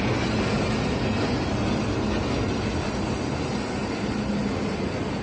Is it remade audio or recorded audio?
recorded